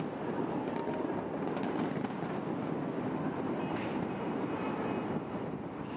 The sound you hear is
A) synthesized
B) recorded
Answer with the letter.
B